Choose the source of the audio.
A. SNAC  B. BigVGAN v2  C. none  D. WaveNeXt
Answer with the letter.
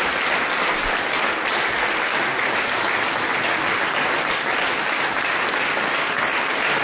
C